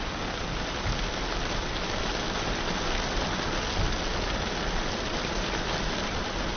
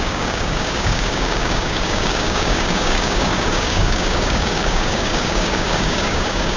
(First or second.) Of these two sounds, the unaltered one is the first